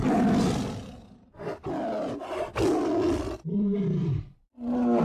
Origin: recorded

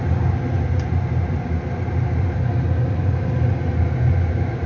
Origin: recorded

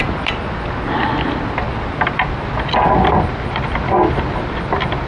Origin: recorded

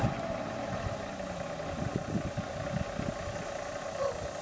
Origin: recorded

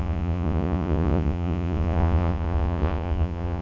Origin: remade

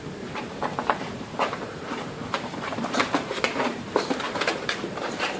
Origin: remade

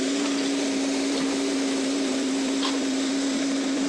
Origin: remade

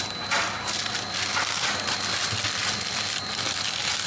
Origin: recorded